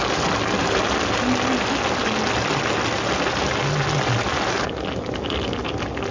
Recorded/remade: recorded